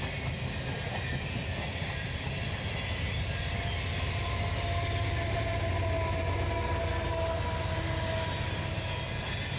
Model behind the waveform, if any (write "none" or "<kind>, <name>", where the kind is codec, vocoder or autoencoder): none